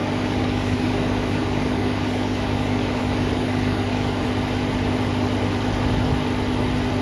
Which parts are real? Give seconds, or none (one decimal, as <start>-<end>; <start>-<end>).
4.2-7.0